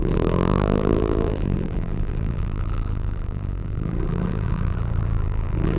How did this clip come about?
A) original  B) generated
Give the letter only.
B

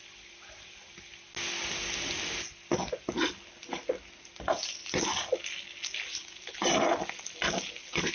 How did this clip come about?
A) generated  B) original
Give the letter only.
B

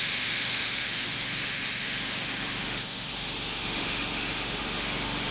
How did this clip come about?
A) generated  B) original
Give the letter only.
A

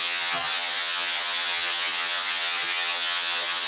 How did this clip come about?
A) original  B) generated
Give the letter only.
B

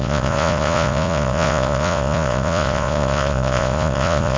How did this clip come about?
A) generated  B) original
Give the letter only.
A